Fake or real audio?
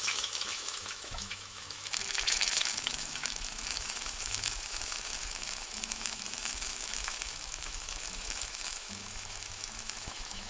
fake